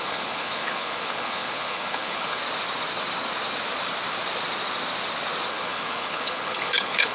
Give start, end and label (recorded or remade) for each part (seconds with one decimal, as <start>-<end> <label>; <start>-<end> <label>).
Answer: 0.0-2.4 remade; 2.4-5.5 recorded; 5.5-7.1 remade